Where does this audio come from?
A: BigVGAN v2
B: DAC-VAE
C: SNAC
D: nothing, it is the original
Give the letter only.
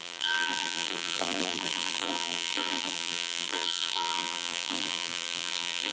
A